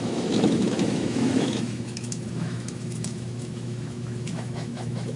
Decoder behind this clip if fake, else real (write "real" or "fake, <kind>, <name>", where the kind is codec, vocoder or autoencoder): fake, autoencoder, DAC-VAE